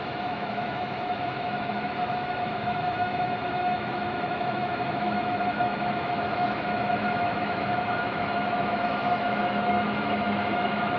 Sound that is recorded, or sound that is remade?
remade